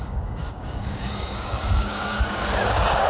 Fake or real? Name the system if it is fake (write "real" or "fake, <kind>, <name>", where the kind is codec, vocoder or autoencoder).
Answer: fake, codec, DAC